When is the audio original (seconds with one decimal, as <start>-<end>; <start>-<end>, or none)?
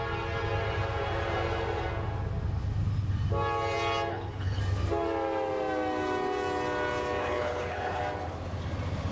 0.0-4.1; 4.6-7.2; 8.0-9.1